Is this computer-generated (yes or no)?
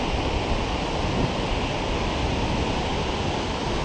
no